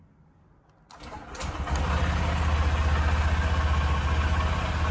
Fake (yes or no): no